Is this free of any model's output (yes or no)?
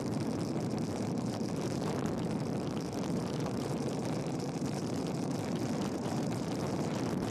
no